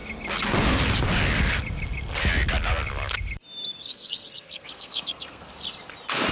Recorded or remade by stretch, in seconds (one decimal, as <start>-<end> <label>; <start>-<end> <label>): 0.0-3.8 recorded; 3.8-5.5 remade; 5.5-6.3 recorded